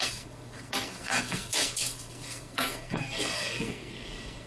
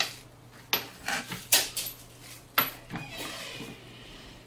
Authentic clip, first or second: second